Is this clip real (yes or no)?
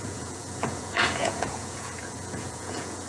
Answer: no